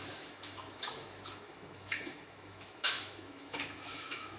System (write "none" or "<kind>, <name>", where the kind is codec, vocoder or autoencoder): autoencoder, DAC-VAE